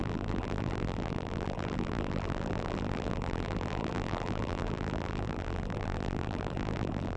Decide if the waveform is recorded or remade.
remade